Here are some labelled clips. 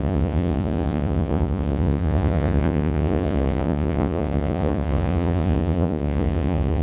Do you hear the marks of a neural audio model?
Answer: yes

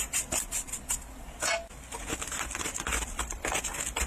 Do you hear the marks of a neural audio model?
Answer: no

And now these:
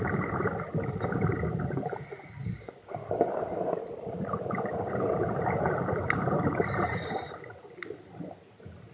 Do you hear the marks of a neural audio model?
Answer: yes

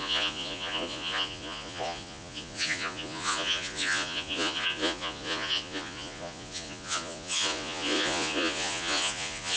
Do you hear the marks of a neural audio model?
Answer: yes